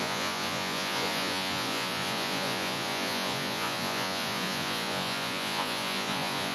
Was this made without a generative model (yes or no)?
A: no